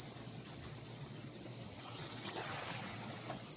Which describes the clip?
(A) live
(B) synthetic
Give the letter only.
B